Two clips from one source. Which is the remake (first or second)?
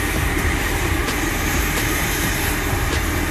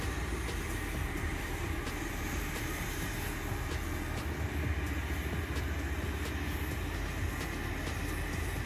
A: first